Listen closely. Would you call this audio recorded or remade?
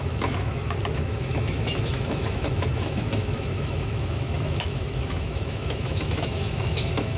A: remade